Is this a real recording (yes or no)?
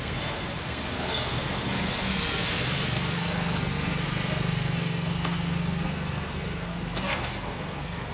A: no